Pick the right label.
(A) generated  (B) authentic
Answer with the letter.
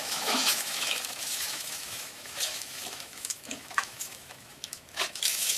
A